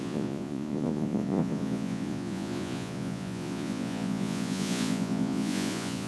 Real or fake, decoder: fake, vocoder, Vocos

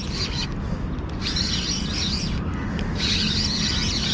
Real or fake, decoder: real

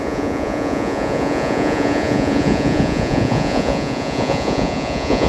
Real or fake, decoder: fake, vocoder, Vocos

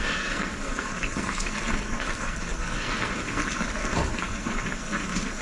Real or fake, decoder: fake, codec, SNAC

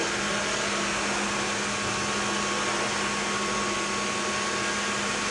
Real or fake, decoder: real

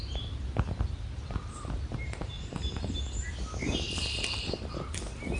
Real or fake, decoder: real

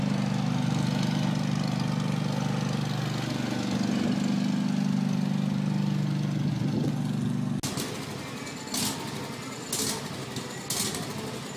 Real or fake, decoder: real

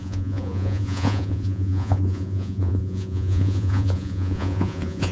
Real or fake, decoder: fake, vocoder, Vocos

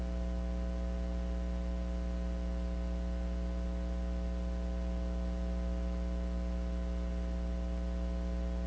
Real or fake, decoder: real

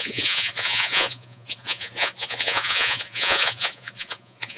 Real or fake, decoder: fake, vocoder, Vocos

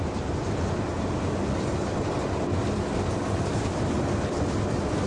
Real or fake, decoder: real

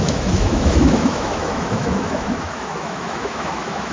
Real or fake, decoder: fake, autoencoder, DAC-VAE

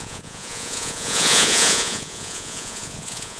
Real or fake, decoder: fake, vocoder, Vocos